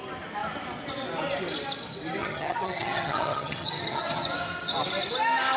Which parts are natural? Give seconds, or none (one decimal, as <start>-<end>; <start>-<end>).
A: 0.0-2.2; 4.3-5.6